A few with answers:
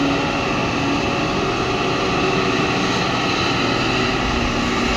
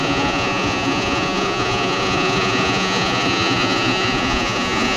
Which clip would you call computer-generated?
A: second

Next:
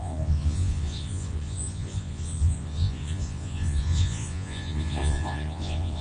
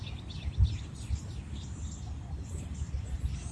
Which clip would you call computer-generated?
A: first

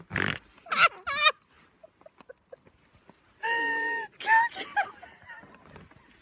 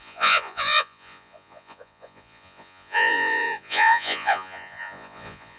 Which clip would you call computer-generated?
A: second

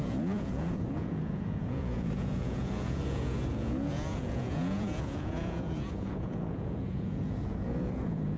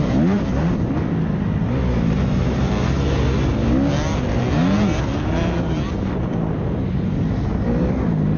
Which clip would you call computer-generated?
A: first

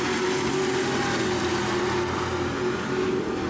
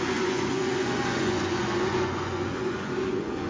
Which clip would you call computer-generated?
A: second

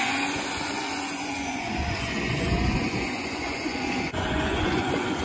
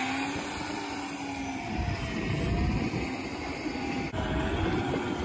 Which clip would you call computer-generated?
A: first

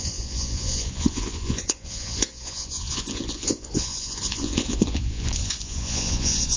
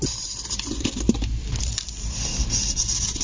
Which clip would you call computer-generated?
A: first